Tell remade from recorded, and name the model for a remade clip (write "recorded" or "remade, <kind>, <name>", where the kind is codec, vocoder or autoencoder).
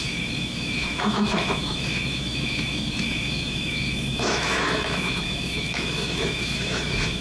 remade, autoencoder, DAC-VAE